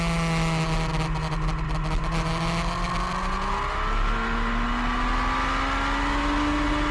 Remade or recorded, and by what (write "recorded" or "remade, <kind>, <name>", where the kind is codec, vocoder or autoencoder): recorded